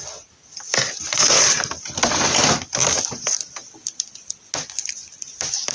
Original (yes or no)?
yes